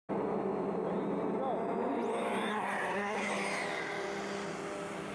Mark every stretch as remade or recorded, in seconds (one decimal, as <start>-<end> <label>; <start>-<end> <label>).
0.0-2.5 recorded; 2.5-3.3 remade; 3.3-5.1 recorded